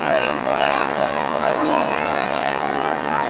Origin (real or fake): fake